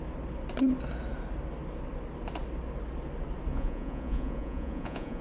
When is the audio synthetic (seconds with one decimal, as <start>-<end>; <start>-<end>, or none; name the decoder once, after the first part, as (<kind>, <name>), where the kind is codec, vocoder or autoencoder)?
3.5-5.2 (vocoder, Vocos)